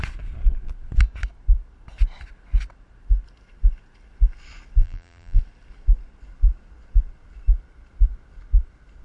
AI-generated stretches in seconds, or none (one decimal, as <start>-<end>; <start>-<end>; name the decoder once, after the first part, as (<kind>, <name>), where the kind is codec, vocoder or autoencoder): 4.8-5.4 (vocoder, BigVGAN v2)